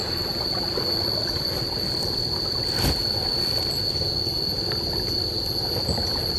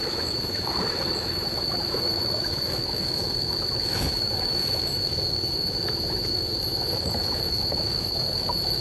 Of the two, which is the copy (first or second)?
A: second